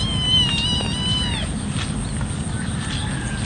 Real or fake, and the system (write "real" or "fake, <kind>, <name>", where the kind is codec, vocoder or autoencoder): real